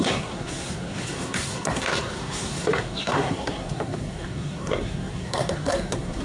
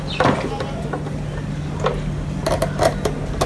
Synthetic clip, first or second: first